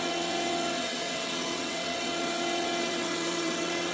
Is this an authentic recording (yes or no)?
no